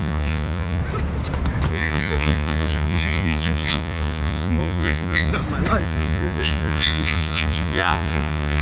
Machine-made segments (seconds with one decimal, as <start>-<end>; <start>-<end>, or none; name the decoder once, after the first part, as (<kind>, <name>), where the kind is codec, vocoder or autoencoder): 0.0-0.8 (vocoder, Vocos); 1.7-5.3; 5.8-8.6